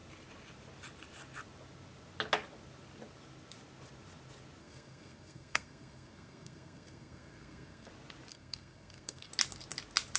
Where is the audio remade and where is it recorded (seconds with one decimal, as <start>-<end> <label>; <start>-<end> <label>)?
0.0-4.6 recorded; 4.6-7.9 remade; 7.9-8.3 recorded; 8.3-9.3 remade; 9.3-10.2 recorded